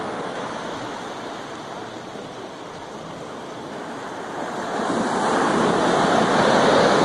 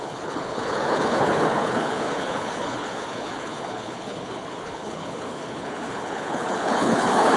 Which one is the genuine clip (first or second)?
first